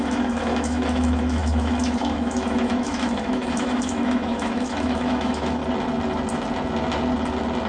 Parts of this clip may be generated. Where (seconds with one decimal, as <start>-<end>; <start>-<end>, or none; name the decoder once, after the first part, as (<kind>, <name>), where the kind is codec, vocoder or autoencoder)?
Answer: 0.0-5.6 (autoencoder, DAC-VAE)